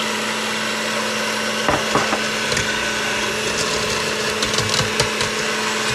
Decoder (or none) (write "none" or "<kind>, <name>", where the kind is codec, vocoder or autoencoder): none